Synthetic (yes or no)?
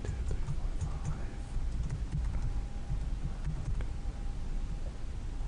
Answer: no